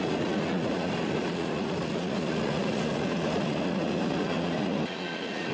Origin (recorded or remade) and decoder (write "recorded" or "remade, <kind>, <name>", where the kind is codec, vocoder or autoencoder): remade, vocoder, Vocos